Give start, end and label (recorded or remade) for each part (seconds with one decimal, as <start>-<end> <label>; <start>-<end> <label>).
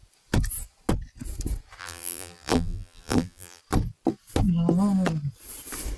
0.0-1.8 recorded; 1.8-3.6 remade; 3.6-6.0 recorded